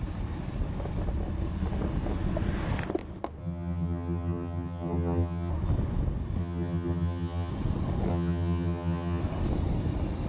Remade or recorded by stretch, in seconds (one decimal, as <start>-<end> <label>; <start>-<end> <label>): 0.0-3.4 recorded; 3.4-5.5 remade; 5.5-6.4 recorded; 6.4-7.5 remade; 7.5-8.1 recorded; 8.1-9.2 remade; 9.2-10.3 recorded